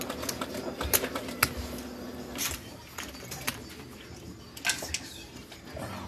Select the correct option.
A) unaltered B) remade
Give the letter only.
A